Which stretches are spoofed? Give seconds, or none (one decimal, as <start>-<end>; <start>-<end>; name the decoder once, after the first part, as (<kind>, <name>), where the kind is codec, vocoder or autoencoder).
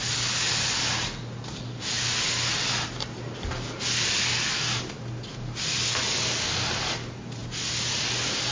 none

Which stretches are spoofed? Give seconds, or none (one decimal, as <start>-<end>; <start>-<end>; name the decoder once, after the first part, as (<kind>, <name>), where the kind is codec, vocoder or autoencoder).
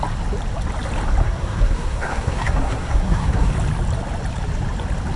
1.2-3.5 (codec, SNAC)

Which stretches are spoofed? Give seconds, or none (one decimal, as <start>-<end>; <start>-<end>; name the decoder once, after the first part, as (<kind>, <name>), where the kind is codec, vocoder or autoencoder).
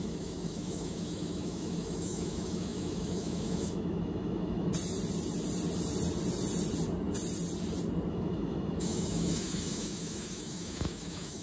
0.0-4.7 (autoencoder, DAC-VAE); 8.1-11.4